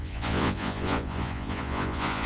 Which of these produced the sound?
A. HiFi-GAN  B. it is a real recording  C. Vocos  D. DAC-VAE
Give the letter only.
C